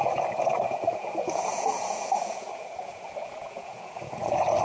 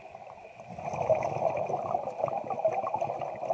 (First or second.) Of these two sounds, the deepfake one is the first